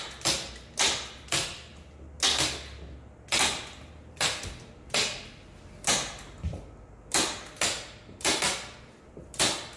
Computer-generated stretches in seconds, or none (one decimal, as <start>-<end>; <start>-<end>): none